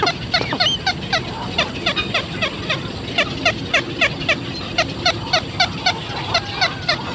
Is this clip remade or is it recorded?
recorded